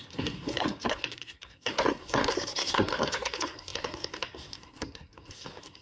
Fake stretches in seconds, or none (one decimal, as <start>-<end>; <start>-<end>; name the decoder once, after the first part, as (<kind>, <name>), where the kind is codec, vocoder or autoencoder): 0.0-5.8 (codec, SNAC)